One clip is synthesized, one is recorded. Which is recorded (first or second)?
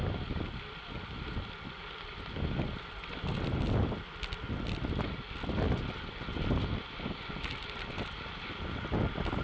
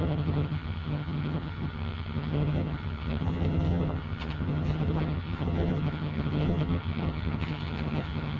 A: first